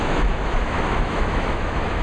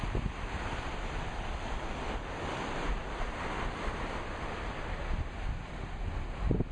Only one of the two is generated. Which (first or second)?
first